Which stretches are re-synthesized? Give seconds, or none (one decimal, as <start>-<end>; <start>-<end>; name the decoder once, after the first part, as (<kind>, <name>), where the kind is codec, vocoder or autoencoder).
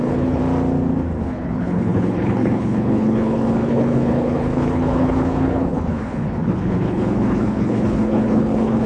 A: 0.0-0.4 (codec, HILCodec); 1.2-8.9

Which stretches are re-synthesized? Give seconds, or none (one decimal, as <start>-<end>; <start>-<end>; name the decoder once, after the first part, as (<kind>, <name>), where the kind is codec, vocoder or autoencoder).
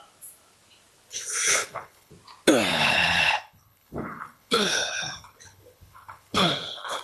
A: 1.1-2.1 (codec, HILCodec); 2.7-7.0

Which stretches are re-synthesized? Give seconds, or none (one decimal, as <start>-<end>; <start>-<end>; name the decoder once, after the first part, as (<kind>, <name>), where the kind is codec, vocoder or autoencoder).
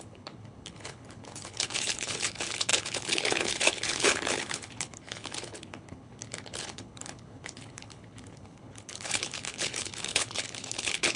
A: 0.0-11.2 (codec, HILCodec)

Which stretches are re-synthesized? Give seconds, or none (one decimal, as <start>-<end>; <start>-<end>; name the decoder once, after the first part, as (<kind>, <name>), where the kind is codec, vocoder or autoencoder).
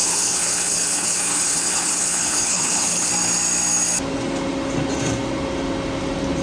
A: 0.0-3.1 (codec, HILCodec)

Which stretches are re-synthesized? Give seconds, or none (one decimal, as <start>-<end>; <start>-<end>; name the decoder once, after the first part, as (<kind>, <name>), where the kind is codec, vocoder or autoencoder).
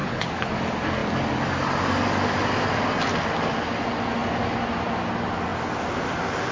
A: 0.0-0.5 (codec, HILCodec)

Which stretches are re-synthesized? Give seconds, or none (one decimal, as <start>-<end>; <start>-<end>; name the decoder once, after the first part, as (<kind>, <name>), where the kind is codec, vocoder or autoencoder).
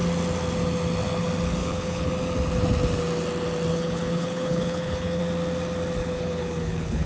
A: 1.6-2.1 (codec, HILCodec); 3.7-5.2; 6.0-7.1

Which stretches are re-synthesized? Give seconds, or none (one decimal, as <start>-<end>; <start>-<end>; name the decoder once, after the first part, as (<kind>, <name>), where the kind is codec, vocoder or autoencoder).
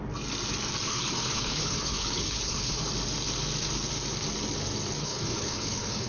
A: 0.9-2.8 (codec, HILCodec); 5.0-6.1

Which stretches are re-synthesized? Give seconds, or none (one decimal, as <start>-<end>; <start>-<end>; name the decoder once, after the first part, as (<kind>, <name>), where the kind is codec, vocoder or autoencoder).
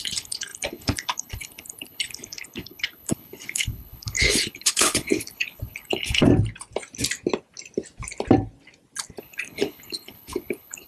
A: 0.0-6.3 (codec, HILCodec); 9.2-10.9